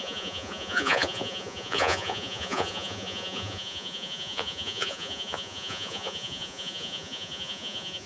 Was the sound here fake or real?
fake